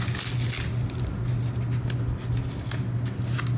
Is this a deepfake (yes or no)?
no